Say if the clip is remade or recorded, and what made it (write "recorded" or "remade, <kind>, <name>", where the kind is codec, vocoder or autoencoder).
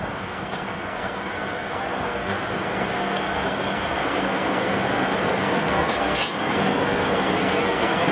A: remade, codec, SNAC